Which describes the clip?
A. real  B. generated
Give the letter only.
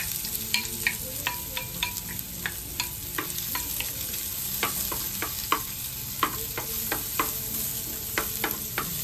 A